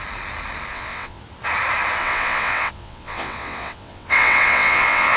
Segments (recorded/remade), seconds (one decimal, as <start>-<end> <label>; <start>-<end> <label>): 0.0-0.7 recorded; 0.7-1.2 remade; 1.2-2.0 recorded; 2.0-5.2 remade